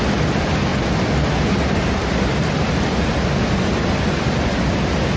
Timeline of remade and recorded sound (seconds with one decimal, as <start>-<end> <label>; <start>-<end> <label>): 0.0-5.2 recorded